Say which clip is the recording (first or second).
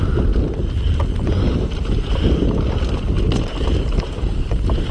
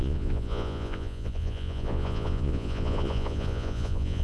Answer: first